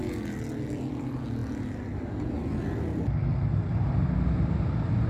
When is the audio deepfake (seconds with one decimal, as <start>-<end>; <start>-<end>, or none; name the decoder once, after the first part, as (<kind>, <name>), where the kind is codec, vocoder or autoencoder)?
none